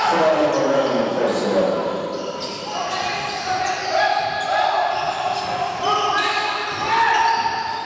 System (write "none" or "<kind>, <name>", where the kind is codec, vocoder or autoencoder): none